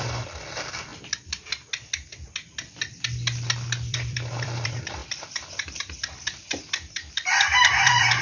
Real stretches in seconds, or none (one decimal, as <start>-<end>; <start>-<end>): 0.9-3.9; 5.0-7.1